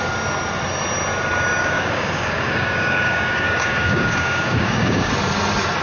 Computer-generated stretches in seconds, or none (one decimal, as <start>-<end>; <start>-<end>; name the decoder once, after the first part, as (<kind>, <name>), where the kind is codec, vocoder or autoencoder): 1.6-5.1 (codec, DAC)